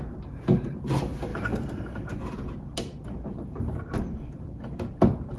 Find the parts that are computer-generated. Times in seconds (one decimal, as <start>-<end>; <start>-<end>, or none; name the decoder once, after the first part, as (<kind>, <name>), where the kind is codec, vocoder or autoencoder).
none